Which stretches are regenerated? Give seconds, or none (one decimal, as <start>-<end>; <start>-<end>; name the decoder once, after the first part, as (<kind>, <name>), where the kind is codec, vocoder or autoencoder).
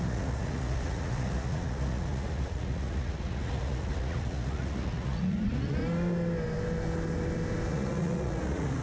0.0-5.8 (vocoder, Vocos); 7.7-8.8